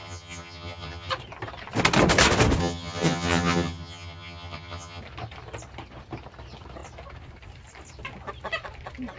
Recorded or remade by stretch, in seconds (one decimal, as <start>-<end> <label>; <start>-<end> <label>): 0.0-1.1 remade; 1.1-2.6 recorded; 2.6-5.0 remade; 5.0-9.2 recorded